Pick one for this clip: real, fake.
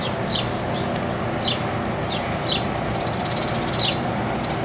real